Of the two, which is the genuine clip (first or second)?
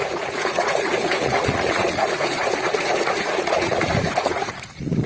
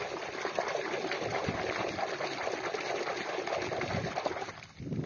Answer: second